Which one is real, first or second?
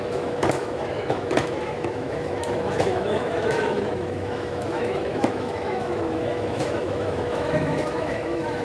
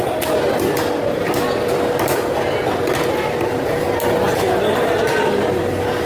second